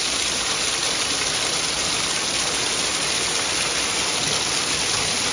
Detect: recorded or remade recorded